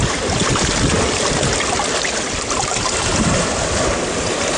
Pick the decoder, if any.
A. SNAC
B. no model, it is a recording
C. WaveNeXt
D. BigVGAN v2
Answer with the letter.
B